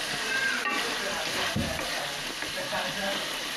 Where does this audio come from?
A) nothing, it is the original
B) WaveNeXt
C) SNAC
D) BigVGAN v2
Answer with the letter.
A